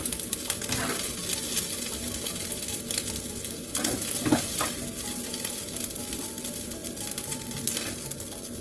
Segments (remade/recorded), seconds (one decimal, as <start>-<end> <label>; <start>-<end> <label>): 0.0-6.8 recorded; 6.8-7.7 remade; 7.7-8.6 recorded